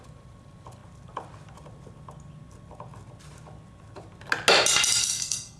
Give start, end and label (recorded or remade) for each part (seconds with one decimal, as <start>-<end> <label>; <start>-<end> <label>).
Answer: 0.0-5.0 recorded; 5.0-5.6 remade